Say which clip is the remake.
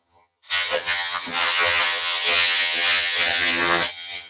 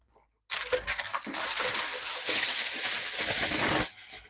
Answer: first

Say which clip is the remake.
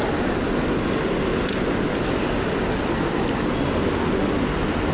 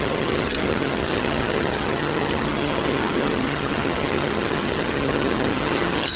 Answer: second